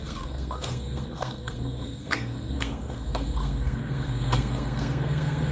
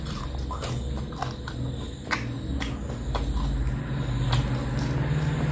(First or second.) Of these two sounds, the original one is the second